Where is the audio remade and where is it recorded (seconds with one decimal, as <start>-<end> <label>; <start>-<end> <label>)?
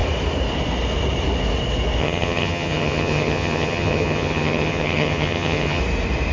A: 0.0-2.0 recorded; 2.0-5.8 remade; 5.8-6.3 recorded